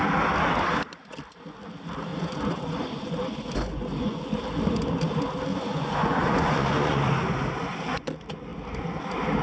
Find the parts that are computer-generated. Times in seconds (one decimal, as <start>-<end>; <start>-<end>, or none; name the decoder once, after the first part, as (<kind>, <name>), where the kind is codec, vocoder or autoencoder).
2.1-4.2 (vocoder, Vocos); 5.5-7.1